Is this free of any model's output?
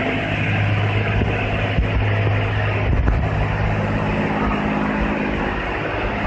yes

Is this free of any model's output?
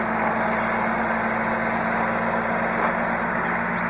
yes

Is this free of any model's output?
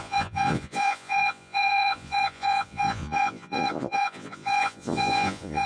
no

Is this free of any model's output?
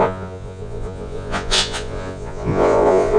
no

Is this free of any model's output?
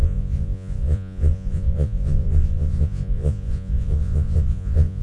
no